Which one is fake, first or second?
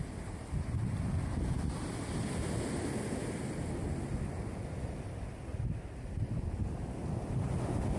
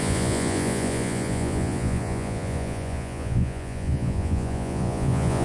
second